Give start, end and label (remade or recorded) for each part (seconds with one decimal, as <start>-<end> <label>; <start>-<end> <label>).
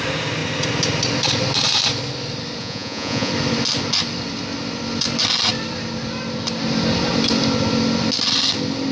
0.0-2.6 recorded; 2.6-3.3 remade; 3.3-8.9 recorded